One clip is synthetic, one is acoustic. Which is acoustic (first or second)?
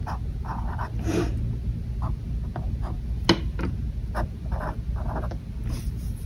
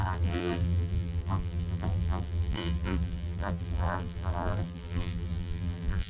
first